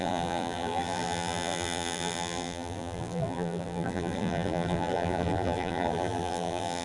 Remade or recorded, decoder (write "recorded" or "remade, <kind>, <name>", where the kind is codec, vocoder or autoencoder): remade, vocoder, BigVGAN v2